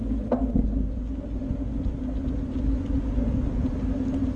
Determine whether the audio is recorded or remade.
recorded